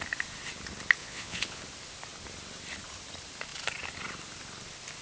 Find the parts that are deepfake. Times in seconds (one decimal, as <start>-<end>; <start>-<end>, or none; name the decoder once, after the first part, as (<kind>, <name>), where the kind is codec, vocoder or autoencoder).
1.0-1.6 (vocoder, Vocos)